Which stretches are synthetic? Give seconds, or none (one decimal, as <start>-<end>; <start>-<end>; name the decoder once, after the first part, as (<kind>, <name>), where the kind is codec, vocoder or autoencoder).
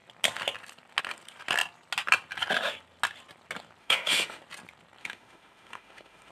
3.8-4.4 (autoencoder, DAC-VAE); 5.0-6.3